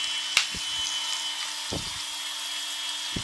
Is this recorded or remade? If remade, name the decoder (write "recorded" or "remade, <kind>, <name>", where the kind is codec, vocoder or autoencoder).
recorded